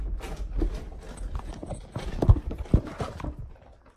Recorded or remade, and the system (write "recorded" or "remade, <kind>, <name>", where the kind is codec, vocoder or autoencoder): recorded